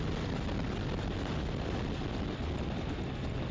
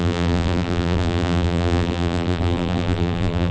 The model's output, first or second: second